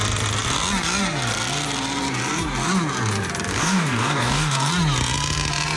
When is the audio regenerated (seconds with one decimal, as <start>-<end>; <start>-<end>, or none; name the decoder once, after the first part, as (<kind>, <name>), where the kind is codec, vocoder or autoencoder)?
3.5-4.7 (codec, DAC)